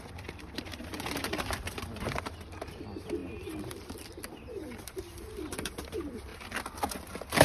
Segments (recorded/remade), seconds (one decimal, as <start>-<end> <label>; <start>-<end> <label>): 0.0-6.3 remade; 6.3-6.8 recorded; 6.8-7.4 remade